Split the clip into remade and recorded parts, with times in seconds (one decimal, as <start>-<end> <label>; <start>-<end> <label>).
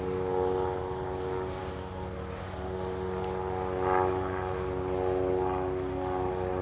0.0-6.6 recorded